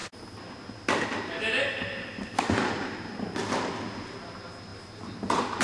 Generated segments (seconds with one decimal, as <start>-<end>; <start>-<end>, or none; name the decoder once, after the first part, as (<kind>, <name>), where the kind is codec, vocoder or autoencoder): none

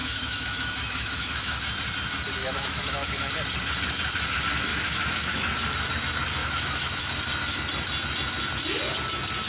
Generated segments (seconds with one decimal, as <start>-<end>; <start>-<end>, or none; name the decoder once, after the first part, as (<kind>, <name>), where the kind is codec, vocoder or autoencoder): 0.0-1.6 (autoencoder, DAC-VAE); 2.4-3.3; 4.7-5.3; 6.4-7.0

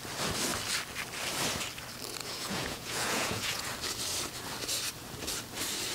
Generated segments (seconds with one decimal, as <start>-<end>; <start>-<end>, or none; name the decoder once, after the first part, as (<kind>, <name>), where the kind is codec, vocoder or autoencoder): 2.2-3.7 (vocoder, Vocos)

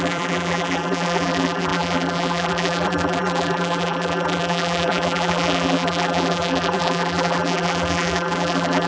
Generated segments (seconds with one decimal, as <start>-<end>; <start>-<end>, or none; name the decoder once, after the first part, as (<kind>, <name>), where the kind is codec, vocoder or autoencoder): 0.0-8.9 (vocoder, BigVGAN v2)

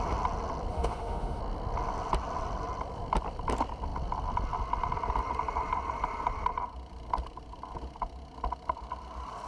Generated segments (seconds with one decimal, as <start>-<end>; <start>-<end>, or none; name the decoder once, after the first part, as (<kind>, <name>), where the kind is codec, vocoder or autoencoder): 0.7-1.4 (autoencoder, DAC-VAE)

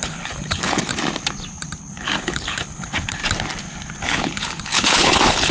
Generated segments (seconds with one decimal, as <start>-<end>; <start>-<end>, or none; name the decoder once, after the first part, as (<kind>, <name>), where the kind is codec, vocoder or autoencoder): 0.0-0.9 (codec, HILCodec); 1.8-3.2; 4.0-5.5

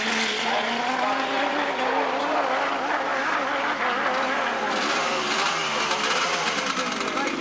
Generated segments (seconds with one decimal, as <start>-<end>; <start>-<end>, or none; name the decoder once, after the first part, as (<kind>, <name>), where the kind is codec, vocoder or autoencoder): none

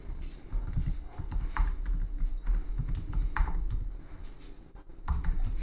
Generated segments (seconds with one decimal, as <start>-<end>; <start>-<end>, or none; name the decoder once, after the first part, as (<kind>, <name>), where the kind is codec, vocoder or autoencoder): none